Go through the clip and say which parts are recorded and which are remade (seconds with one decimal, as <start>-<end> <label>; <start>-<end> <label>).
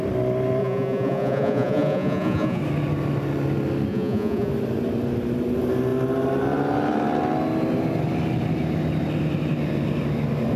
0.0-0.6 recorded; 0.6-2.6 remade; 2.6-3.9 recorded; 3.9-4.5 remade; 4.5-10.6 recorded